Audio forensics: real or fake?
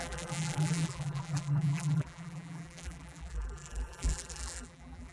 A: fake